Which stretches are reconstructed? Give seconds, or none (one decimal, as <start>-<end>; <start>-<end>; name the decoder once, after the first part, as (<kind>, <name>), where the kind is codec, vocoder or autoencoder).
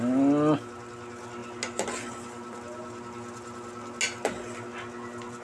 none